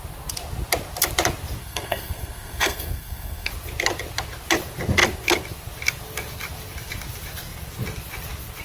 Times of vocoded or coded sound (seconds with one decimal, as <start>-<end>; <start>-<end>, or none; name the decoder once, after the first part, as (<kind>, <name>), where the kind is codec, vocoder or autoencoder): 1.6-3.5 (codec, SNAC)